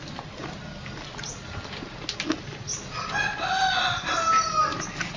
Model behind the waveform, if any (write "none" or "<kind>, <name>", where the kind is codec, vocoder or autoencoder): none